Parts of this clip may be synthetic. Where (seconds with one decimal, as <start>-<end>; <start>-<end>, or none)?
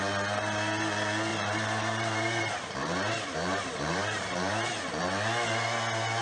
1.3-5.0